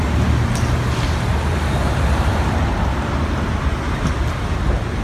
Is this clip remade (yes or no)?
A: no